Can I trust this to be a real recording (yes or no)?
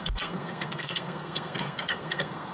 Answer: no